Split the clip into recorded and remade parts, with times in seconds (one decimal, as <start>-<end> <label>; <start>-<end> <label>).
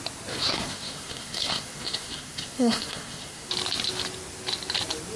0.0-0.4 recorded; 0.4-3.5 remade; 3.5-5.2 recorded